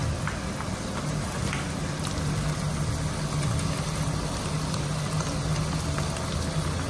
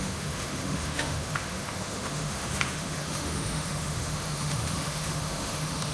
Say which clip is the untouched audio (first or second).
first